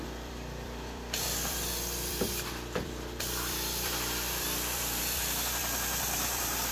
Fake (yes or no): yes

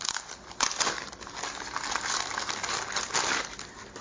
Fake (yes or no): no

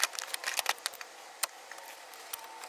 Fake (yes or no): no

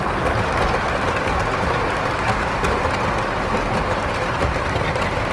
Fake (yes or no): no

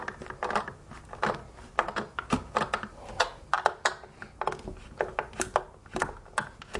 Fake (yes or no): no